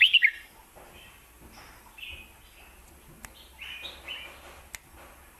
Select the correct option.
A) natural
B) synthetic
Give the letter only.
A